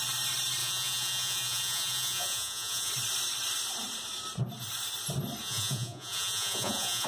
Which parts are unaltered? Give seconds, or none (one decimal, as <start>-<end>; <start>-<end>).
0.0-0.6; 2.9-5.4